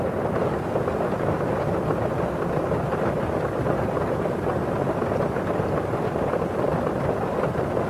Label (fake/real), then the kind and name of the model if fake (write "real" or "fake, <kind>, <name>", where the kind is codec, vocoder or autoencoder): real